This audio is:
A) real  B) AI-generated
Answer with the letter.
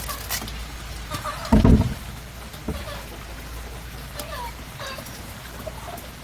A